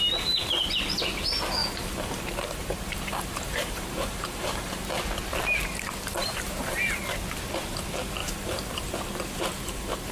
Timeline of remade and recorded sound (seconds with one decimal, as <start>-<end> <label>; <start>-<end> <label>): 0.0-1.6 recorded; 1.6-4.9 remade; 4.9-6.2 recorded; 6.2-7.0 remade; 7.0-8.2 recorded; 8.2-10.1 remade